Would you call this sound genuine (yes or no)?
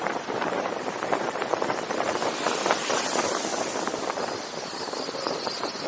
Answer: no